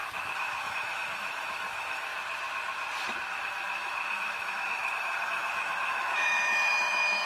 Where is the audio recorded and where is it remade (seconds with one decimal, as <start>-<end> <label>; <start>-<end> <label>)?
0.0-2.1 remade; 2.1-3.3 recorded; 3.3-7.3 remade